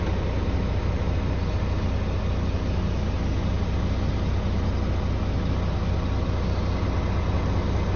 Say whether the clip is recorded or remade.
recorded